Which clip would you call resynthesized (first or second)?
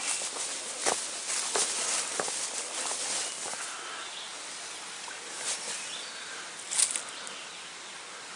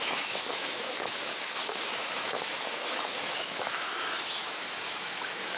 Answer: second